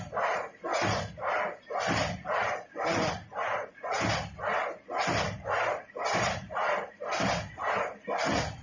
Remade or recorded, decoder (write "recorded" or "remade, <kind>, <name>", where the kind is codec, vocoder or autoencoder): recorded